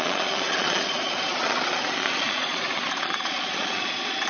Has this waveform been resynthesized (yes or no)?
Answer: yes